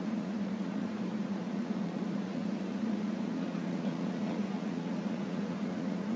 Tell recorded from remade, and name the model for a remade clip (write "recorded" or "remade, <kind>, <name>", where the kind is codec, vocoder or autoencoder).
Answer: remade, vocoder, Vocos